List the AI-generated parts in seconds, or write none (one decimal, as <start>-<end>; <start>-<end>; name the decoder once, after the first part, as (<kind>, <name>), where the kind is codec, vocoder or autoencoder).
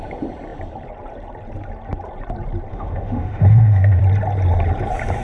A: 2.7-4.0 (autoencoder, DAC-VAE)